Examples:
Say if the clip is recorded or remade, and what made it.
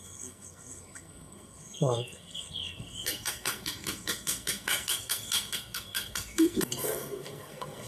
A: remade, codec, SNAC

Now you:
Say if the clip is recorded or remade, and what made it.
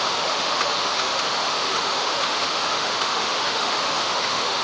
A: remade, autoencoder, DAC-VAE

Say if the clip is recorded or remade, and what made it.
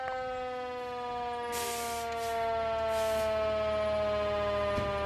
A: recorded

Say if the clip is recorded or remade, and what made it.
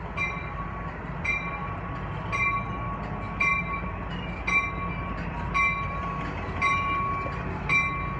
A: recorded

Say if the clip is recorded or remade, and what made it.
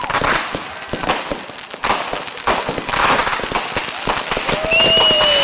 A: recorded